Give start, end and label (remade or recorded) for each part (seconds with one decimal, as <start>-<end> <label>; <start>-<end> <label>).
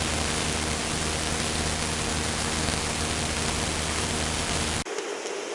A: 0.0-5.5 recorded